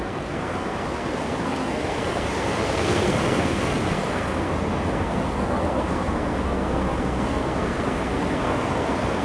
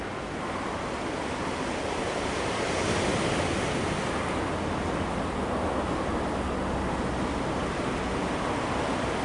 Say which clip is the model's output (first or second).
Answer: first